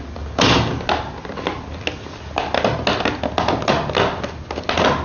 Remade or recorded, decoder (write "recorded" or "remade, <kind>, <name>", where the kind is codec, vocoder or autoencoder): recorded